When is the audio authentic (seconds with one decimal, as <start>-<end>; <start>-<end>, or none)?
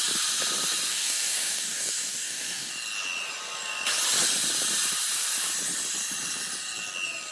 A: 0.0-0.9; 2.7-7.3